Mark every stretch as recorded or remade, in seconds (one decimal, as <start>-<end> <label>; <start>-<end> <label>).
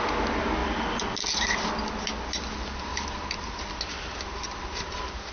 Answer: 0.0-5.3 recorded